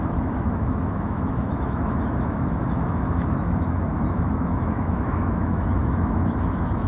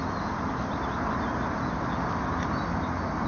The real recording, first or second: second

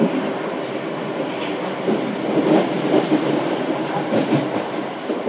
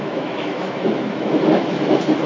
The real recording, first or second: first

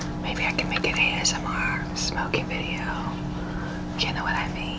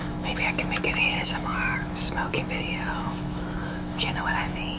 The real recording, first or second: first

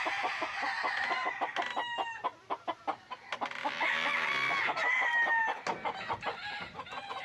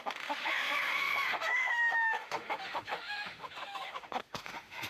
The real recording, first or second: first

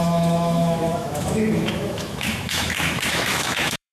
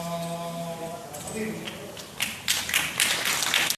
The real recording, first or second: second